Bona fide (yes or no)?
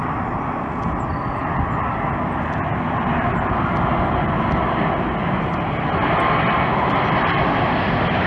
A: yes